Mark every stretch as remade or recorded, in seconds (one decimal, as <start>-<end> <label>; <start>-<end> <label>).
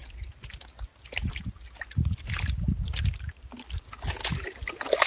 0.0-5.1 recorded